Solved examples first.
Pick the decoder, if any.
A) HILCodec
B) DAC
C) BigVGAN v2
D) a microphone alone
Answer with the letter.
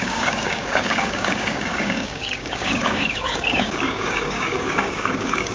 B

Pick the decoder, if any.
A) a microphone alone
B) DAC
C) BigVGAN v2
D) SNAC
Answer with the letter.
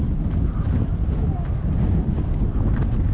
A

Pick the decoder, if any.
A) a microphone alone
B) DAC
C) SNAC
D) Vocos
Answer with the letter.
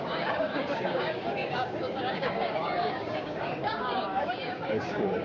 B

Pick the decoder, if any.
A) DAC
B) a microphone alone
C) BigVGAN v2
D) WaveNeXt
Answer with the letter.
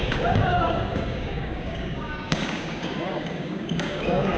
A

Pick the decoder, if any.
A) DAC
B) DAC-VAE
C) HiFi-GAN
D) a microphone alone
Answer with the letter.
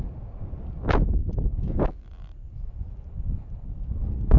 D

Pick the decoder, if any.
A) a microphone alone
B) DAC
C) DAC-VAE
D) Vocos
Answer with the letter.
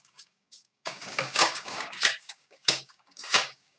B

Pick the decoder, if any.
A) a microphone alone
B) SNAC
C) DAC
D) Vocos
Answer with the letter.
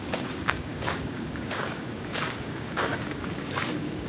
C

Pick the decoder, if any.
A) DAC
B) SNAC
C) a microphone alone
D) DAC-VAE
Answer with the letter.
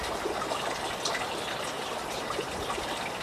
C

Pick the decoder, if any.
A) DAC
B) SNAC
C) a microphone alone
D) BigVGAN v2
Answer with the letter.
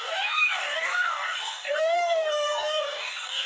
A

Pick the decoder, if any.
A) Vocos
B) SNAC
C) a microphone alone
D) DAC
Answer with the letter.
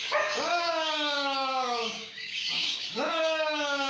D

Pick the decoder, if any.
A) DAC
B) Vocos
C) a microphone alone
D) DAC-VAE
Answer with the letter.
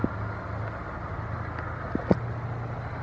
C